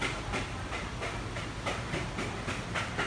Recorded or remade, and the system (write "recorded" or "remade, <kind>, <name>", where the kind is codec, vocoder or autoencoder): recorded